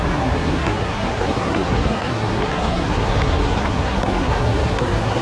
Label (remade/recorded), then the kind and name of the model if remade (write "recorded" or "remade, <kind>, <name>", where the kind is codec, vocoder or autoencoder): remade, codec, SNAC